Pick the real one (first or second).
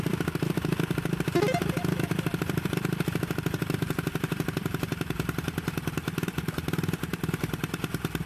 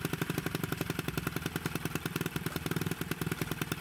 second